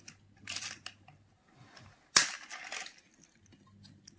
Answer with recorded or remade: recorded